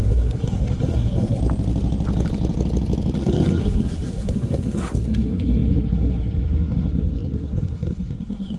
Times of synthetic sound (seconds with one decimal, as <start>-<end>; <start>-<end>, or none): 0.0-1.4; 3.2-8.6